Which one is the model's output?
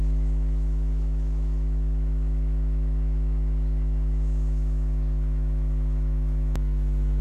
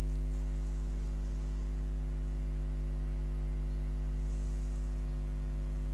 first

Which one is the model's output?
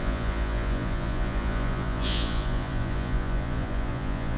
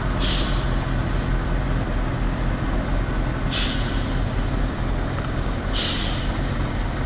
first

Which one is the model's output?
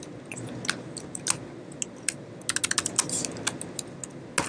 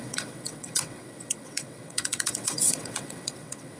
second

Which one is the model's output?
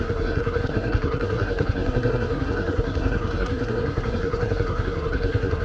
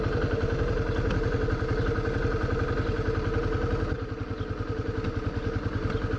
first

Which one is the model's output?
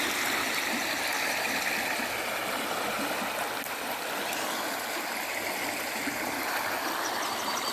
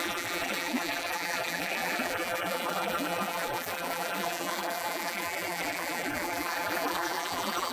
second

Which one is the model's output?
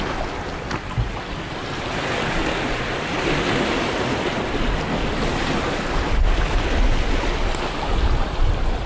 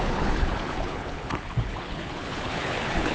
second